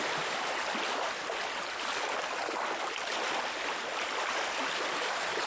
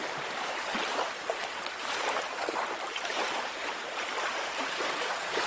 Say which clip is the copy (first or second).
second